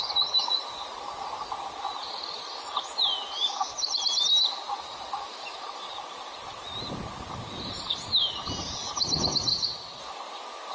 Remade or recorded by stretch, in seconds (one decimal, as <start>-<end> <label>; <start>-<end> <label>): 0.0-9.5 recorded; 9.5-10.0 remade; 10.0-10.7 recorded